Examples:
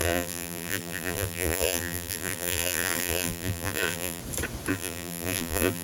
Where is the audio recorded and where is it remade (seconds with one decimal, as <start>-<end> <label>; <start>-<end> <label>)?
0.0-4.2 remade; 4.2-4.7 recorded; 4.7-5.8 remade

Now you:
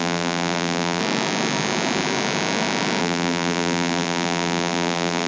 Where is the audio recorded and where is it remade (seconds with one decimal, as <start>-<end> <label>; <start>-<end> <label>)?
0.0-1.0 remade; 1.0-3.0 recorded; 3.0-5.3 remade

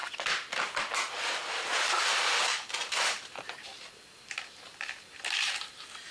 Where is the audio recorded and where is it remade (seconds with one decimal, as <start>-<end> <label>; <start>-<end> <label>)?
0.0-2.4 recorded; 2.4-6.1 remade

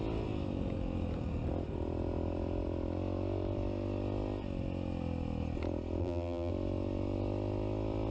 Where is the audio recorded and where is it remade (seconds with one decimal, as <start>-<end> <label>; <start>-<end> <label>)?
0.0-6.0 recorded; 6.0-6.5 remade; 6.5-8.1 recorded

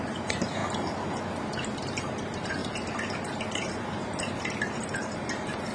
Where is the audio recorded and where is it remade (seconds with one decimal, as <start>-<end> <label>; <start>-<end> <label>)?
0.0-0.6 remade; 0.6-2.0 recorded; 2.0-2.6 remade; 2.6-3.6 recorded; 3.6-5.7 remade